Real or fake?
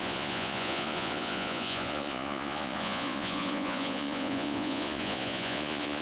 fake